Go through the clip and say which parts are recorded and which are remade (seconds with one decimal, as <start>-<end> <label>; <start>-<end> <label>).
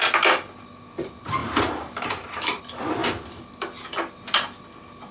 0.0-1.4 recorded; 1.4-2.6 remade; 2.6-5.1 recorded